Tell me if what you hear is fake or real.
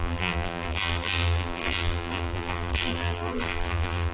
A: fake